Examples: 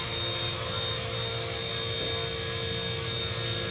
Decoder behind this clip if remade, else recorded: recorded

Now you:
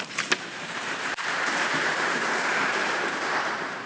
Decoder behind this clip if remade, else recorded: remade, vocoder, BigVGAN v2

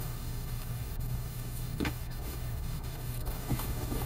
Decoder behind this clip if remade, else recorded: remade, codec, DAC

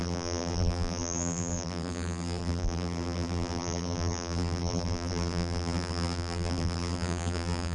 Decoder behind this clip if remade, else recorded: remade, vocoder, BigVGAN v2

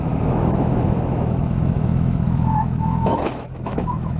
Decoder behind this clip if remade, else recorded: remade, autoencoder, DAC-VAE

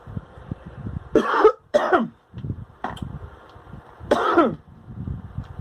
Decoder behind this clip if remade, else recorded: remade, vocoder, BigVGAN v2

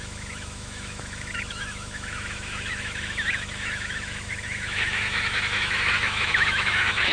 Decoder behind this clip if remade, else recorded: remade, autoencoder, DAC-VAE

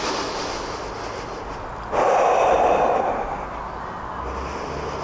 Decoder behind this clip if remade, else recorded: recorded